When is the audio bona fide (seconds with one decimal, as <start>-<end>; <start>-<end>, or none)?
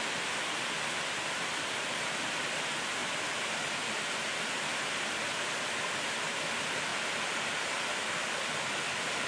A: 0.0-9.3